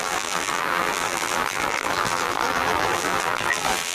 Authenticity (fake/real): fake